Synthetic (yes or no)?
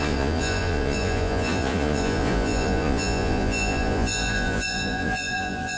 yes